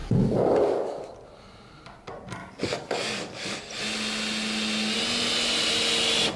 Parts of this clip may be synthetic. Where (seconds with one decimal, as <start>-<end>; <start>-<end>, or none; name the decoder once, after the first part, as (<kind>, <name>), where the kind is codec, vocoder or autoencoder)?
0.0-1.1 (codec, DAC); 2.4-3.6